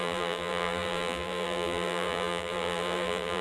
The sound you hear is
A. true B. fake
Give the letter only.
B